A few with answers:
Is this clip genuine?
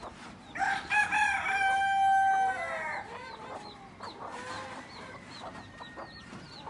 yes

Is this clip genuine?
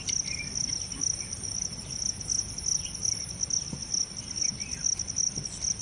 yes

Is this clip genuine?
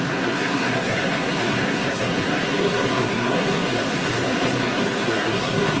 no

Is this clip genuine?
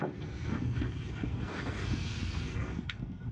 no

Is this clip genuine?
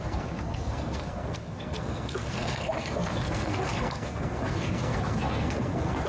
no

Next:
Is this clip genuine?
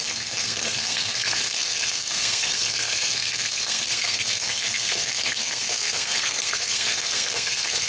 no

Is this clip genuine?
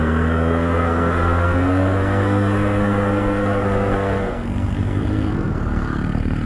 no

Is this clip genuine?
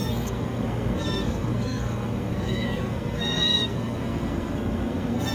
no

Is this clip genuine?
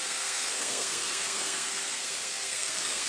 no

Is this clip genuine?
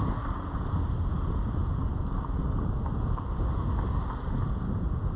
yes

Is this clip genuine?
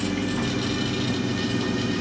yes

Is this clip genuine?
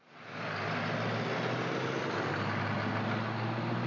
yes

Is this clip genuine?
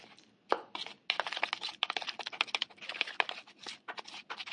yes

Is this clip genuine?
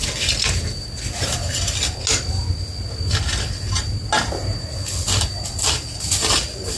yes